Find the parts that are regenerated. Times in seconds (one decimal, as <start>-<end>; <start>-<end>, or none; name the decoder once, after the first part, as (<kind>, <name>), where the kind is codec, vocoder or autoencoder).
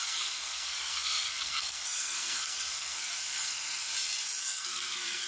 0.0-3.9 (codec, SNAC); 4.4-5.3